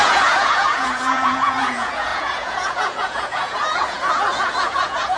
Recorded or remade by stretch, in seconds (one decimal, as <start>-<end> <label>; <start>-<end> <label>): 0.0-5.2 remade